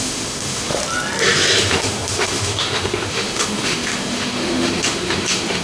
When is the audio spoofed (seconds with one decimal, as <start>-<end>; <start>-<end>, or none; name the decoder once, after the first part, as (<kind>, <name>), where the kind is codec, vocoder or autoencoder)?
0.0-0.8 (autoencoder, DAC-VAE); 1.6-5.6